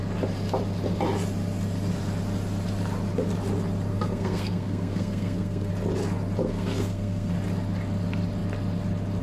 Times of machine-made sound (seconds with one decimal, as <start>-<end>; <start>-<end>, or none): 3.9-5.7; 6.4-7.3